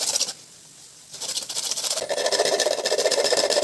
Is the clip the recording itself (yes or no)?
no